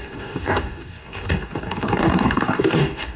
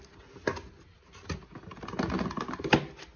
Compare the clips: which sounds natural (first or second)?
second